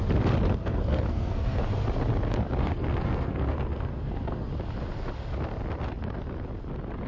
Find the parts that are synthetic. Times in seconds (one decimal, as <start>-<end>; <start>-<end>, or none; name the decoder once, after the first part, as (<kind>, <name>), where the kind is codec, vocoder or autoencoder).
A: 0.6-1.6 (codec, SNAC); 2.6-4.5